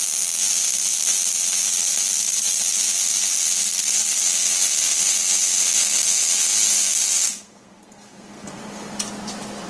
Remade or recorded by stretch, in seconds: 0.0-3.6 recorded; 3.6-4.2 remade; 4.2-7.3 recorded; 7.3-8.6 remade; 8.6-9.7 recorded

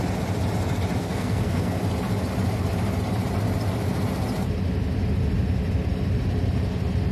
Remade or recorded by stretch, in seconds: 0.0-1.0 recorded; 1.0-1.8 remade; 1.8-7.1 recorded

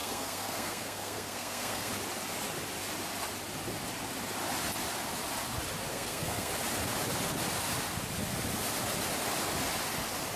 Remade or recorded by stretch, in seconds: 0.0-1.9 remade; 1.9-5.9 recorded; 5.9-6.5 remade; 6.5-10.4 recorded